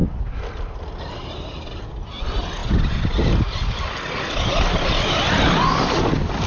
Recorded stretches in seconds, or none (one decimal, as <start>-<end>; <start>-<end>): 0.0-6.5